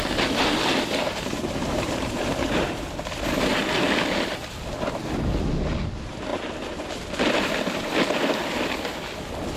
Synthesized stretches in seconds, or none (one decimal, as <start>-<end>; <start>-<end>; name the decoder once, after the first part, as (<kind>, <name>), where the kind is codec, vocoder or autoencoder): 1.0-2.6 (vocoder, BigVGAN v2)